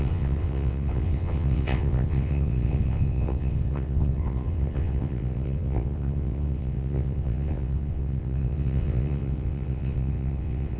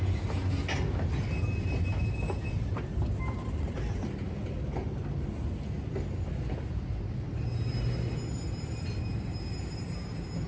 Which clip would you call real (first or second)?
second